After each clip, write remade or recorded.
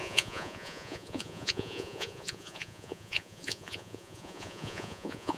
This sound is remade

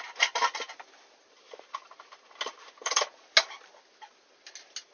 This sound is recorded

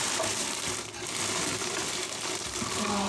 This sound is recorded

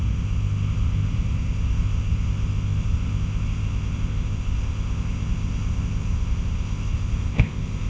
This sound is remade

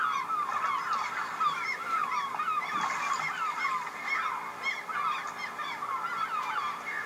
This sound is recorded